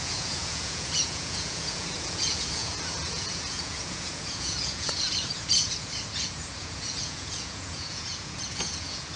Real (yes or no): no